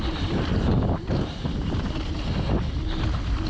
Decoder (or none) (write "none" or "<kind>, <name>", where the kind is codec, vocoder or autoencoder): none